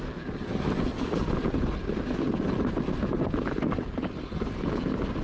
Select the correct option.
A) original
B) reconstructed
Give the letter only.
A